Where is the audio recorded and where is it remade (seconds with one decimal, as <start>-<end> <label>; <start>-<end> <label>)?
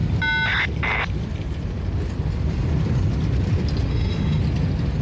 0.0-3.9 recorded; 3.9-4.4 remade; 4.4-5.0 recorded